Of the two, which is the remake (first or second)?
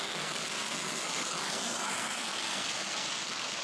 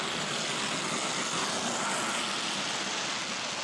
first